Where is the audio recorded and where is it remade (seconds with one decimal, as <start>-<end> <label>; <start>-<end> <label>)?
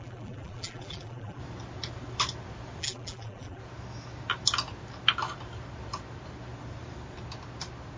0.0-1.4 remade; 1.4-2.8 recorded; 2.8-3.6 remade; 3.6-8.0 recorded